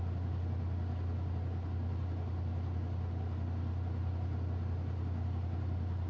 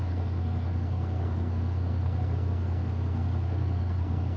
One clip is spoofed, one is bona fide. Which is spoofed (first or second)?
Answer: second